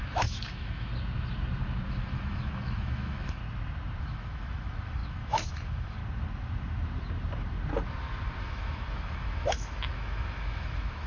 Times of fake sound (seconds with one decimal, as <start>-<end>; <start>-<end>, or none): 0.0-0.9; 1.9-3.4; 4.0-6.0; 8.4-11.1